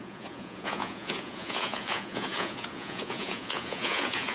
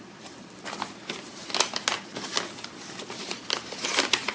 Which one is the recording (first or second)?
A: second